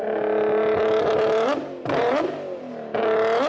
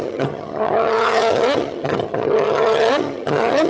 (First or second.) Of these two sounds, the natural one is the first